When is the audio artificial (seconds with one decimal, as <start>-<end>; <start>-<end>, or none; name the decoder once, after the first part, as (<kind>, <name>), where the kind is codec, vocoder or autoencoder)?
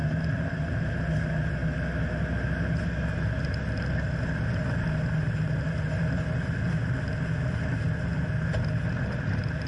0.0-0.9 (vocoder, BigVGAN v2); 8.1-8.8